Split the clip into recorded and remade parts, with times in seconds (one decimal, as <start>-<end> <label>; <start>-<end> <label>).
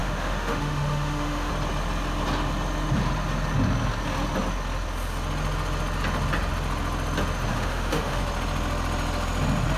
0.0-1.5 remade; 1.5-7.5 recorded; 7.5-8.2 remade; 8.2-9.8 recorded